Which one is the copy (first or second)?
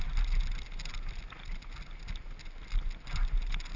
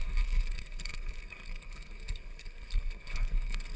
second